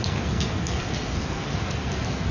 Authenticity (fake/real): fake